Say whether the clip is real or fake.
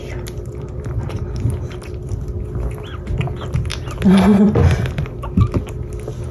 real